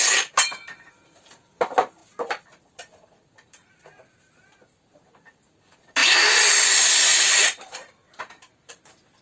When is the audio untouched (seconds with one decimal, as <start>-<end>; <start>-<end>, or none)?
2.0-2.7; 6.0-6.5

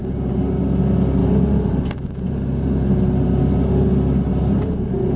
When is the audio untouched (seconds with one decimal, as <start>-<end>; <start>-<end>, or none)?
0.6-1.2; 3.4-4.3

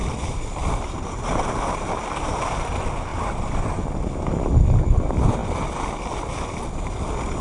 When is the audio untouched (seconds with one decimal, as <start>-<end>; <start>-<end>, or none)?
1.5-3.1; 3.8-7.4